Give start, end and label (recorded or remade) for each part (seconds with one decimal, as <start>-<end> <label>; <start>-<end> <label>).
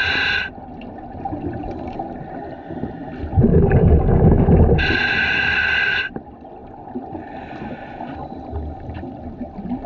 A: 0.0-3.5 recorded; 3.5-4.4 remade; 4.4-9.9 recorded